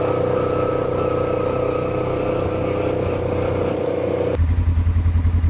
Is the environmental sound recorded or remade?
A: recorded